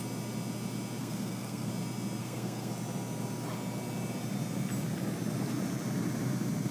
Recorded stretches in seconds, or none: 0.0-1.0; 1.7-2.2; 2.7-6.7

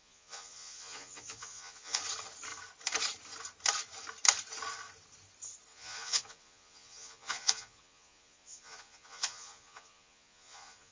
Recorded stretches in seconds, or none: 2.0-5.7

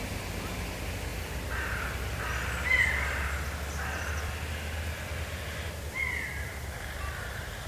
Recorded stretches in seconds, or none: 0.0-1.1; 1.6-2.7; 7.3-7.7